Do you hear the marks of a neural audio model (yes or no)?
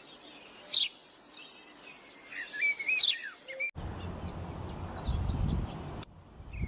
no